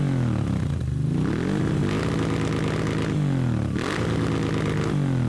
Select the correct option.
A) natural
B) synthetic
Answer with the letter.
A